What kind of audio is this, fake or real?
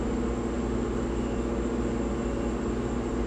real